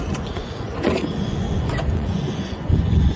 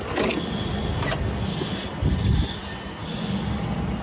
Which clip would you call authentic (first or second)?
second